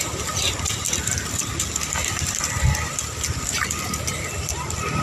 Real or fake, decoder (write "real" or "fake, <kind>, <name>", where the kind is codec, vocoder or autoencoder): real